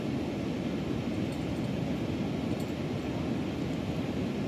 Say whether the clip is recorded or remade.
recorded